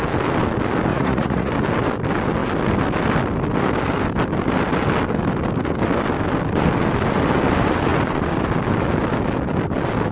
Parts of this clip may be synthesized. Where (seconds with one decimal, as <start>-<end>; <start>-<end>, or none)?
0.9-1.5